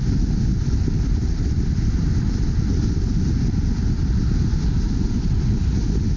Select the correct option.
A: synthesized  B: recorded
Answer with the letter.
B